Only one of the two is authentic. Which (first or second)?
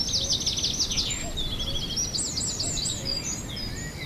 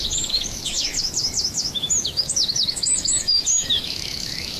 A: first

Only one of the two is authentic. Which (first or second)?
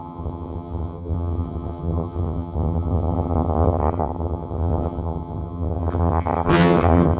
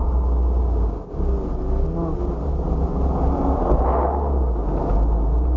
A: second